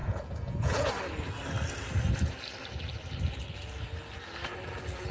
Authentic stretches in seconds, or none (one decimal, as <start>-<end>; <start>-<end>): 0.9-5.1